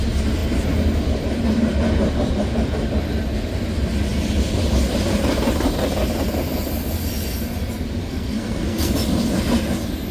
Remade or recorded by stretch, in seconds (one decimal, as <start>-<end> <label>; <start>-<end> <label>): 0.0-8.0 recorded; 8.0-8.9 remade; 8.9-10.1 recorded